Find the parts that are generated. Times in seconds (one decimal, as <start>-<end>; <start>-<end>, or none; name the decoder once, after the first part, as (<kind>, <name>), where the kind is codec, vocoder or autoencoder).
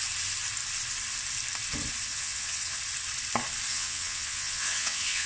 2.1-2.8 (vocoder, WaveNeXt); 3.7-5.3